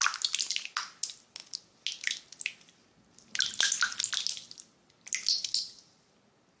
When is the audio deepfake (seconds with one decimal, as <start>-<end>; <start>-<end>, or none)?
none